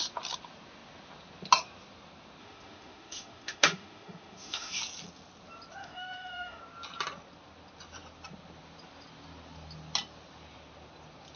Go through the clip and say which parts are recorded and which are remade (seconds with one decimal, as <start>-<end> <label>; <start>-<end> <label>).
0.0-2.4 recorded; 2.4-4.8 remade; 4.8-5.8 recorded; 5.8-6.6 remade; 6.6-11.4 recorded